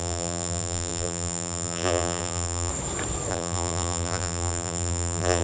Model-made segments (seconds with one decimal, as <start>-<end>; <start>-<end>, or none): 0.0-2.7; 3.3-5.4